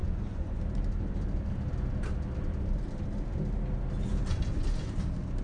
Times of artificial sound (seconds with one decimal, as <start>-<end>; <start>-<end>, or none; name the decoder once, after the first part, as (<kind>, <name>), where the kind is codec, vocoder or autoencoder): 0.0-0.6 (vocoder, Vocos)